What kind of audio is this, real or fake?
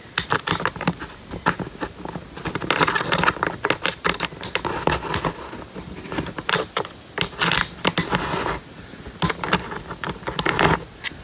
real